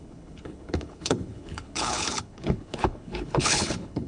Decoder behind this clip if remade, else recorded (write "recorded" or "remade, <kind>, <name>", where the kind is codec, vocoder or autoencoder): remade, codec, HILCodec